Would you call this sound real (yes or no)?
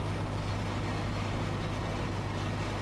yes